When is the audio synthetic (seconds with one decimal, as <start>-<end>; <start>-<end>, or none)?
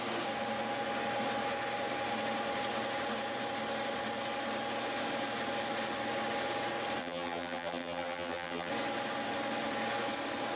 7.0-8.7